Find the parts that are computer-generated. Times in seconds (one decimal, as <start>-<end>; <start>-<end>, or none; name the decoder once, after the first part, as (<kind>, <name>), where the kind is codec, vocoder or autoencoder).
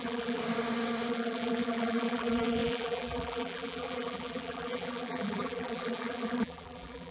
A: 0.0-0.4 (vocoder, BigVGAN v2); 1.1-7.1